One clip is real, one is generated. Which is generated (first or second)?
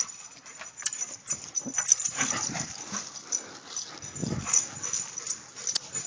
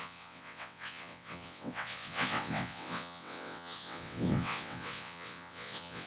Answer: second